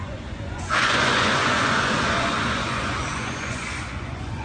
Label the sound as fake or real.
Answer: fake